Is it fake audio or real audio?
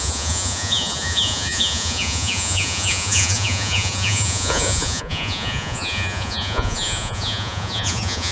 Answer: fake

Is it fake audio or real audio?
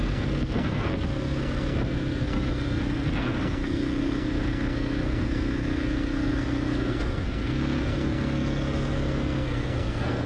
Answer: fake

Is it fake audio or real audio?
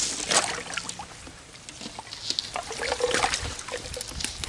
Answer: real